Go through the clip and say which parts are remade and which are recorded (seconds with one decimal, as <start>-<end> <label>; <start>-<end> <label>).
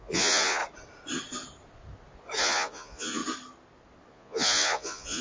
0.0-0.6 remade; 0.6-2.4 recorded; 2.4-3.2 remade; 3.2-4.1 recorded; 4.1-5.2 remade